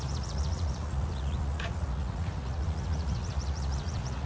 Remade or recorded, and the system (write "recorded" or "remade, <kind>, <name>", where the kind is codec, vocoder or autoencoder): remade, vocoder, Vocos